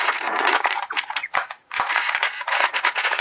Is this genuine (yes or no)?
no